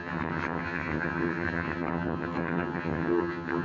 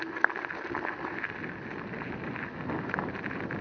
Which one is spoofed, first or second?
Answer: first